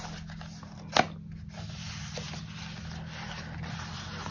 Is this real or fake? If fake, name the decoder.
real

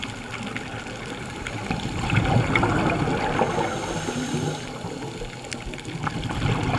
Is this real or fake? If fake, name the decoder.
real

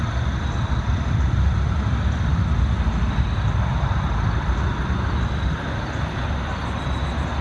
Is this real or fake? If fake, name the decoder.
real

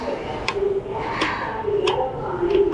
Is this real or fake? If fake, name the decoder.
real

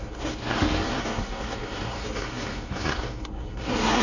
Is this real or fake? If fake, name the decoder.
fake, codec, SNAC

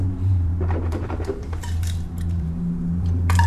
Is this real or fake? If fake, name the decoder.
fake, vocoder, BigVGAN v2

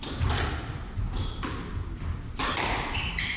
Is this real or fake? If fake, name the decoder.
real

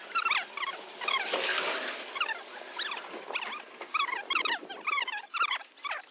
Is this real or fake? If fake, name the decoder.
real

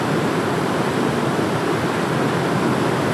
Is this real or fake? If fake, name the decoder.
real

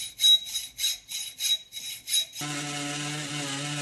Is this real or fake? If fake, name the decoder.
real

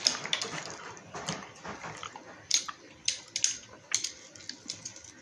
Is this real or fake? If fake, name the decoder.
real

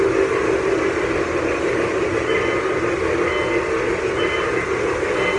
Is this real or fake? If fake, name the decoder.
real